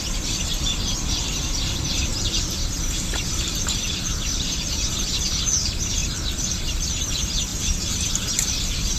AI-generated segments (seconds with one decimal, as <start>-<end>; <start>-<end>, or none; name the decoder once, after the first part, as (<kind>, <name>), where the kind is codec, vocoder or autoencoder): 2.0-4.9 (vocoder, BigVGAN v2); 7.5-9.0